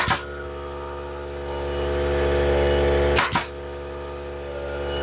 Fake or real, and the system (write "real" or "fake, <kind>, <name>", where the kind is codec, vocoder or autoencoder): real